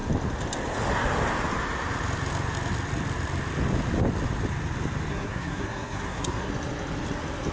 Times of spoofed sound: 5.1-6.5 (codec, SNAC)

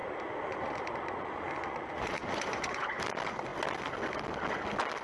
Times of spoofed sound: 0.0-3.0 (vocoder, Vocos)

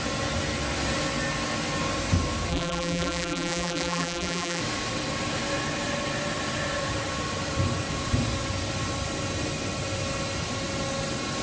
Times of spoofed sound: 2.5-4.6 (vocoder, BigVGAN v2)